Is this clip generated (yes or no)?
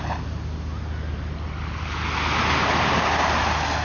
no